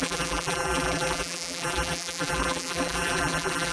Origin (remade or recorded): remade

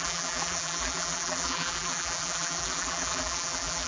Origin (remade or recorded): remade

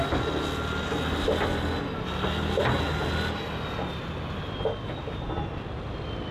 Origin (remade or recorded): recorded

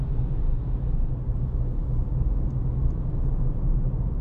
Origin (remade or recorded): recorded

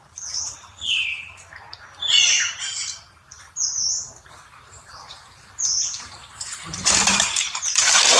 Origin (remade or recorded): remade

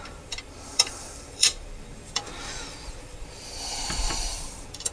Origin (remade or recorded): remade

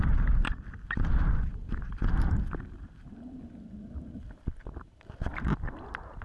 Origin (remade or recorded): remade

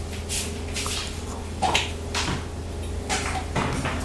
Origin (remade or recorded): recorded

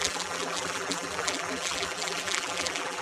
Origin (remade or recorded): remade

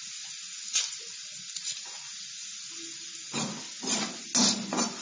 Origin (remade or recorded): recorded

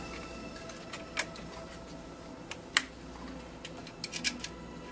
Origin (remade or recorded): recorded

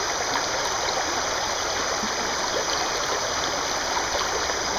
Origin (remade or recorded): recorded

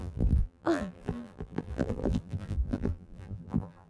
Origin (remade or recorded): remade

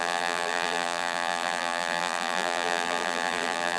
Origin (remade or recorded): remade